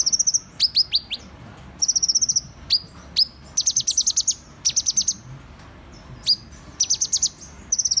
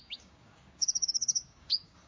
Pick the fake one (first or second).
second